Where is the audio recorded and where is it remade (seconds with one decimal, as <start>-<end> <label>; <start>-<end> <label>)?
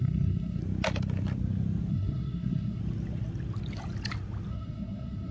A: 0.0-0.6 remade; 0.6-1.9 recorded; 1.9-2.8 remade; 2.8-4.5 recorded; 4.5-5.3 remade